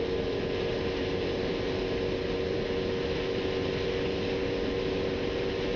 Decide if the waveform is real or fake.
real